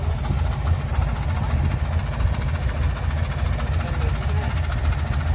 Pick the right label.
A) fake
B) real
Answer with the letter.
B